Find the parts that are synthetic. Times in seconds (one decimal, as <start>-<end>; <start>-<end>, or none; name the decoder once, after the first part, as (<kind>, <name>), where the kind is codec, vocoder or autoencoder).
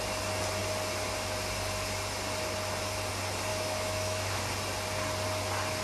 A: 3.5-4.4 (autoencoder, DAC-VAE)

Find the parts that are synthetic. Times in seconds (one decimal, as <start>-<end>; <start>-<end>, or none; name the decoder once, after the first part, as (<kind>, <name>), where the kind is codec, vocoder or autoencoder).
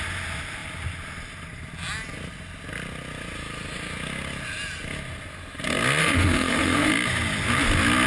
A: 6.0-6.9 (autoencoder, DAC-VAE)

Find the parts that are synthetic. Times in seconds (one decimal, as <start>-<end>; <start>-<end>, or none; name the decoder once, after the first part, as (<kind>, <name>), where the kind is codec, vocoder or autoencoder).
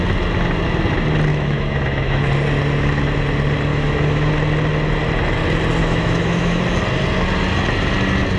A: 1.3-2.3 (autoencoder, DAC-VAE); 3.7-4.3; 5.8-6.6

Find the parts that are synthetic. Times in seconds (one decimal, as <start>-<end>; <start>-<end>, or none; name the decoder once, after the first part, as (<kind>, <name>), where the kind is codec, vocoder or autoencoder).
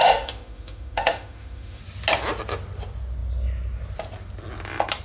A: 0.0-1.8 (autoencoder, DAC-VAE)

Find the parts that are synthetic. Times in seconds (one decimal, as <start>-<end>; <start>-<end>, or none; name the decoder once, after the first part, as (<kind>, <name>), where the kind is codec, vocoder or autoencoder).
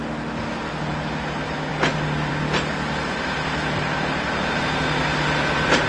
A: none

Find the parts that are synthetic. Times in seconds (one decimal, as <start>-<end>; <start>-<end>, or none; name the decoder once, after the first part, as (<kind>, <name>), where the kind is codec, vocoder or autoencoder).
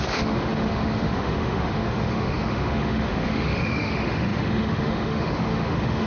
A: 0.0-6.1 (autoencoder, DAC-VAE)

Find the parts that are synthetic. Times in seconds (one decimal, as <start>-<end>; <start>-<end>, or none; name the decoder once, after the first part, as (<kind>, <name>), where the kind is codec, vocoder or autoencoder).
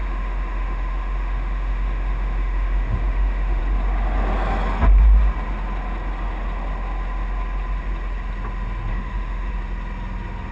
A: 0.0-3.6 (autoencoder, DAC-VAE); 8.9-9.5